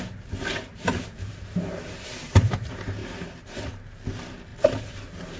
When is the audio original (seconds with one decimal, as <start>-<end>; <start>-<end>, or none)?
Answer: 0.0-0.7; 2.6-3.0; 3.7-4.5